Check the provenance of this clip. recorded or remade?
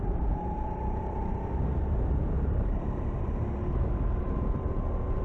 remade